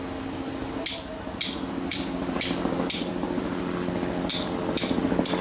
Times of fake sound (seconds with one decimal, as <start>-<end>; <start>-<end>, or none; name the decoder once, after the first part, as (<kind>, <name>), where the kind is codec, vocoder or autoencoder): 1.9-3.6 (vocoder, BigVGAN v2); 4.3-5.0